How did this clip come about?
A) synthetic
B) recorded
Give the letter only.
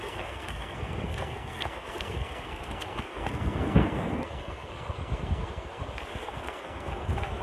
A